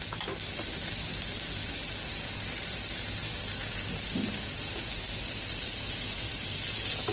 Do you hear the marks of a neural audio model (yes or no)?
no